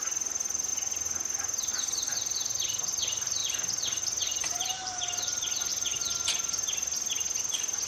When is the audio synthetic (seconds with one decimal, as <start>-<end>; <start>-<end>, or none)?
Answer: 0.0-3.4; 4.0-7.9